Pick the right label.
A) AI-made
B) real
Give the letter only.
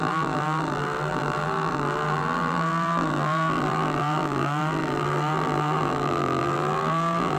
A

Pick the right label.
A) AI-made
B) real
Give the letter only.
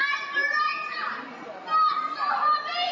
B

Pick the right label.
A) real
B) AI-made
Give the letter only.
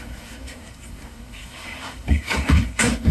B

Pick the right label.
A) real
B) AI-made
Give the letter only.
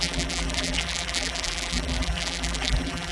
B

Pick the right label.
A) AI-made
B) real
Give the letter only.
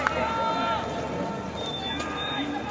B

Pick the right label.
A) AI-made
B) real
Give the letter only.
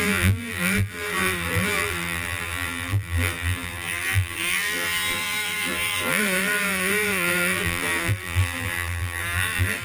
A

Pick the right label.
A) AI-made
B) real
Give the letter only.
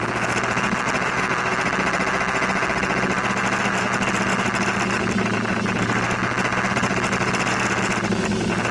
B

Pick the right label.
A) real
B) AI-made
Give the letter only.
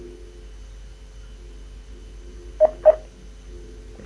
A